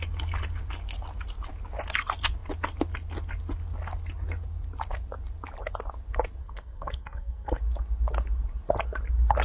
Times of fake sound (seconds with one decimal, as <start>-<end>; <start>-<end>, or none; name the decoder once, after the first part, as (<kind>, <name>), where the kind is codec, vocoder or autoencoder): 6.4-7.6 (codec, SNAC)